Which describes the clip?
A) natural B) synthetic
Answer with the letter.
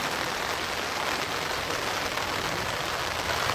A